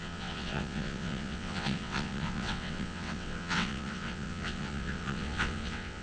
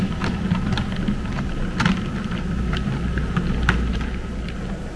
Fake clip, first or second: first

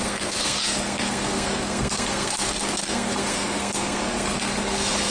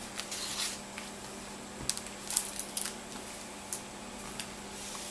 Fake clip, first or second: first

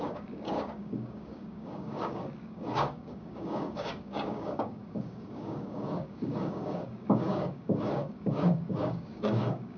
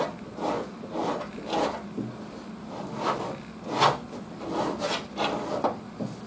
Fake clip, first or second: first